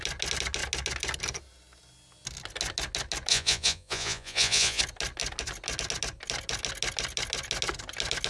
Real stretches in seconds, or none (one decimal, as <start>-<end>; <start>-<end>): 0.0-3.3; 4.8-8.3